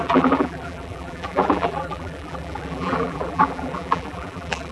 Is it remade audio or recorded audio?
remade